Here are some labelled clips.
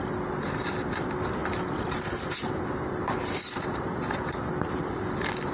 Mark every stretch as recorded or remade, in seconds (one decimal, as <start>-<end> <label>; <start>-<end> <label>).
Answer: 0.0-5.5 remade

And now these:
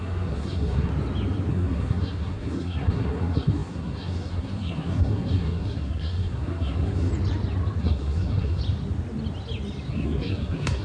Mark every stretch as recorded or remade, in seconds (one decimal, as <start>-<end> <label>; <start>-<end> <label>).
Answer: 0.0-0.9 remade; 0.9-1.5 recorded; 1.5-7.1 remade; 7.1-7.8 recorded; 7.8-8.6 remade; 8.6-9.9 recorded; 9.9-10.8 remade

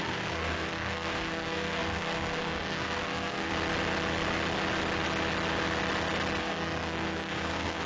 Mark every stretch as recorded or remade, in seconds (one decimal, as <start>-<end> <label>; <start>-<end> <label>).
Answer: 0.0-3.5 remade; 3.5-6.4 recorded; 6.4-7.9 remade